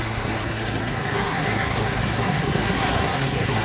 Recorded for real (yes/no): no